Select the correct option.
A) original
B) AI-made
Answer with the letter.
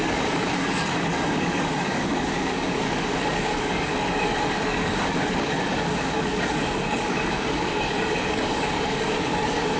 B